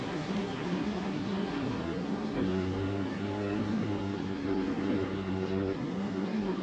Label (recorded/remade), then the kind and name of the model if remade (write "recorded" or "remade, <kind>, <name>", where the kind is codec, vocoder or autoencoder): remade, codec, SNAC